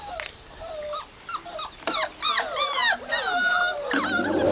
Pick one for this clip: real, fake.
real